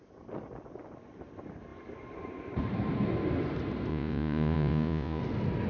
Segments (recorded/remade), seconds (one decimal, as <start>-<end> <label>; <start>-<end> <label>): 0.0-3.9 recorded; 3.9-5.2 remade; 5.2-5.7 recorded